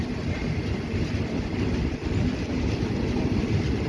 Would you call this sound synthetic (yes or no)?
no